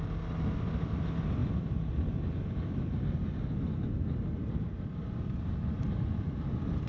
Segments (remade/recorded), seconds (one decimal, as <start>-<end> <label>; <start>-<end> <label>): 0.0-6.9 recorded